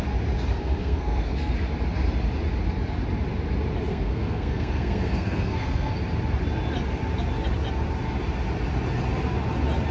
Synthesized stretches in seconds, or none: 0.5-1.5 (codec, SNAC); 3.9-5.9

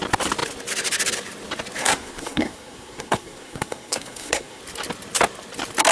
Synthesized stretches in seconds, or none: 1.8-4.6 (codec, SNAC)

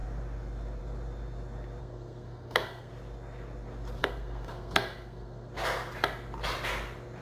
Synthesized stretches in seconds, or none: 1.8-2.9 (codec, SNAC); 4.0-5.5

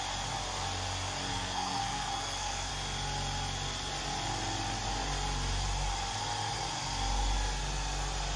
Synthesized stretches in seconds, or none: 1.3-2.7 (codec, SNAC)

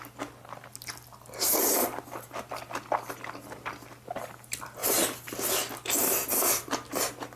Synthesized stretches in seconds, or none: none

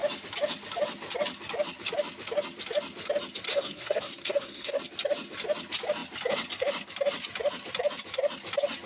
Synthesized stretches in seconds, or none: 3.5-4.8 (codec, SNAC)

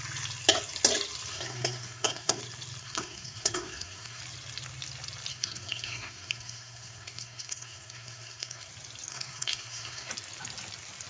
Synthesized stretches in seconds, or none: 1.3-2.4 (codec, SNAC); 2.8-4.2; 5.3-8.7; 9.1-10.1

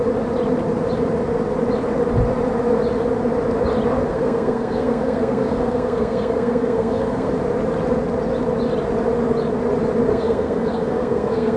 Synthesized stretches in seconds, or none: 4.1-7.3 (codec, SNAC); 10.1-11.6